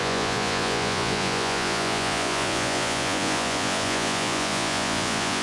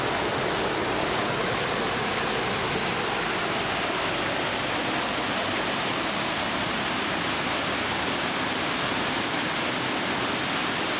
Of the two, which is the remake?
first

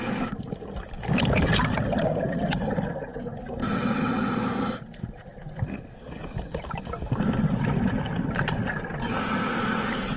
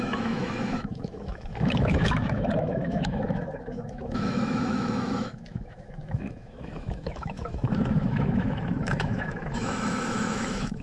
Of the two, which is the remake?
second